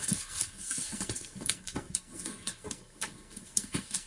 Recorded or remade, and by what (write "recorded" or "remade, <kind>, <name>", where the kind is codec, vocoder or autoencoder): remade, codec, SNAC